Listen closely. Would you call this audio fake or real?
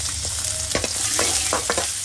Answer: real